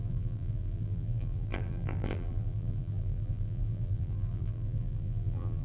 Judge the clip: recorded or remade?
remade